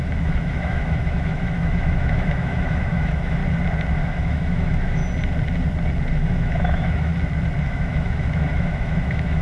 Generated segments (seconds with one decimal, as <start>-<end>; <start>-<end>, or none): 0.0-3.4; 4.0-5.0; 6.1-7.1; 7.6-9.4